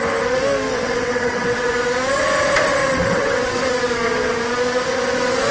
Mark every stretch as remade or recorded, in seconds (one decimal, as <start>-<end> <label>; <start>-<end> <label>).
0.0-0.7 recorded; 0.7-1.7 remade; 1.7-2.8 recorded; 2.8-3.7 remade; 3.7-5.5 recorded